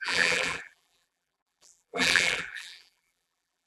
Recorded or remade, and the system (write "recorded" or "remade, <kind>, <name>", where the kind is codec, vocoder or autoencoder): remade, vocoder, BigVGAN v2